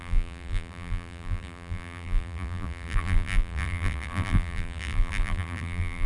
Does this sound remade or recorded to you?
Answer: remade